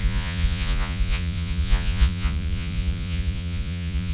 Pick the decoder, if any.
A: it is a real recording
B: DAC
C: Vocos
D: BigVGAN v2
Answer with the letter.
C